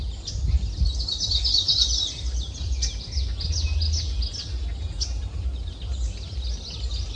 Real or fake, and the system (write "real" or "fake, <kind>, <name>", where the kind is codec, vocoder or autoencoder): real